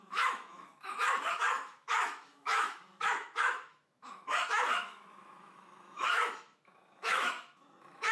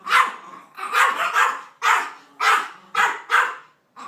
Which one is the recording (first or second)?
second